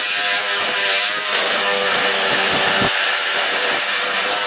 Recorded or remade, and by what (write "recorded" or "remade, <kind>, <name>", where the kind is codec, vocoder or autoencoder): remade, vocoder, BigVGAN v2